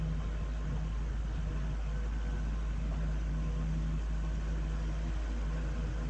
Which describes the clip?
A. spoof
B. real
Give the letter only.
B